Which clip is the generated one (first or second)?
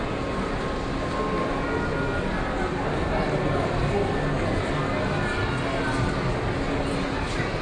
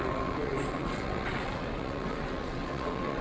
second